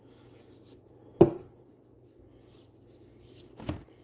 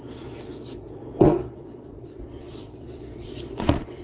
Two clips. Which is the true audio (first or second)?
first